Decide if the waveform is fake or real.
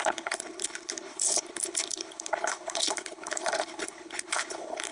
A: fake